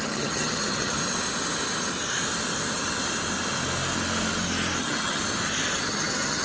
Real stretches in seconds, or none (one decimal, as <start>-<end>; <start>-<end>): 1.0-4.8; 5.2-5.9